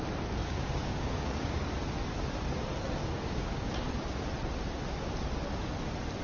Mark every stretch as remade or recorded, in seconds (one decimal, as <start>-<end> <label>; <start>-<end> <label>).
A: 0.0-0.4 recorded; 0.4-1.6 remade; 1.6-3.0 recorded; 3.0-3.7 remade; 3.7-6.2 recorded